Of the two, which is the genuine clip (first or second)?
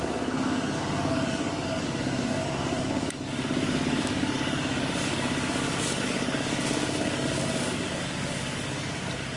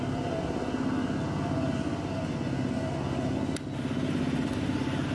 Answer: second